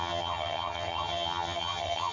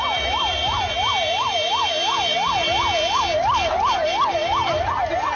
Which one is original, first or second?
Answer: second